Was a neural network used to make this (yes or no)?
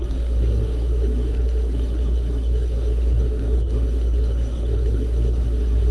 yes